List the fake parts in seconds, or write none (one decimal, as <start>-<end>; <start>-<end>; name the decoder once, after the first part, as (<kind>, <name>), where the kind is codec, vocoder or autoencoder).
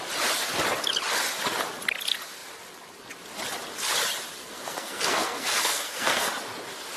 4.4-6.3 (codec, SNAC)